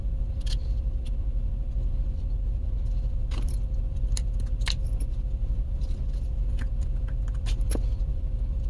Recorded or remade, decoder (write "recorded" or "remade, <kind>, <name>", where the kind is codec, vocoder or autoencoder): remade, vocoder, BigVGAN v2